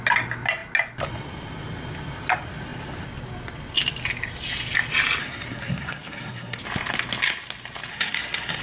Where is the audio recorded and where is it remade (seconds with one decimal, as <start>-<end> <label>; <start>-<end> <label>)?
0.0-5.2 recorded; 5.2-6.6 remade; 6.6-7.9 recorded; 7.9-8.6 remade